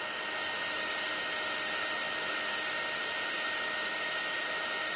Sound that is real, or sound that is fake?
real